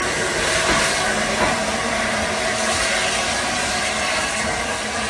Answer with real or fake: real